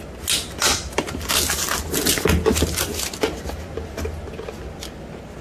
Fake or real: real